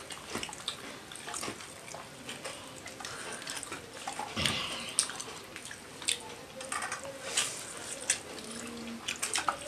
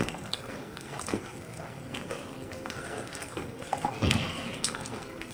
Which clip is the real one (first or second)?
first